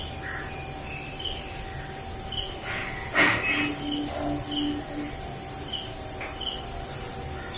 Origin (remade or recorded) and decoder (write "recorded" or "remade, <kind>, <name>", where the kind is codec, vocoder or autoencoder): recorded